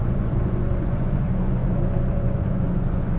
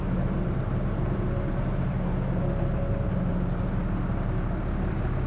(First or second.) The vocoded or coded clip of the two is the first